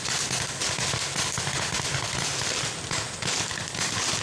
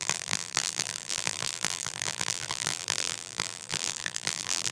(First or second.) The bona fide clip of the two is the first